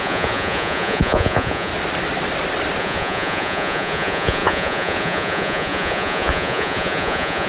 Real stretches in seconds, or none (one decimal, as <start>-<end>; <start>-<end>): 1.7-2.8